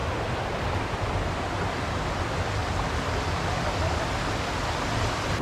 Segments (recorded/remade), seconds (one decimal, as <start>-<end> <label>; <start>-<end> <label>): 0.0-1.1 remade; 1.1-2.6 recorded; 2.6-3.7 remade; 3.7-5.4 recorded